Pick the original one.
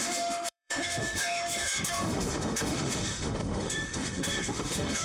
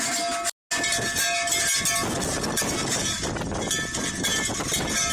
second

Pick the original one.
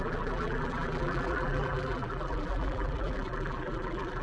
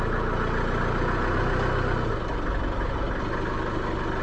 second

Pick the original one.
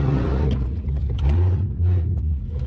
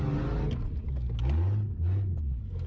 second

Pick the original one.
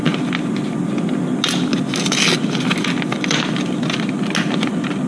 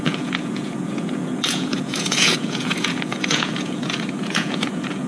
first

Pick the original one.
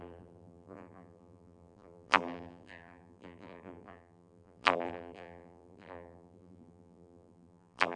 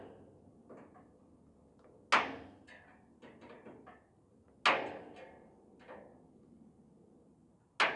second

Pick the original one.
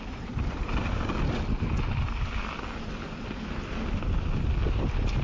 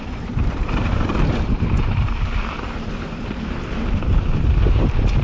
first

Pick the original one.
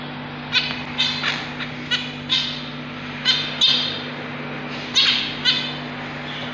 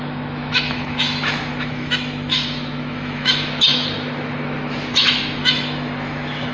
first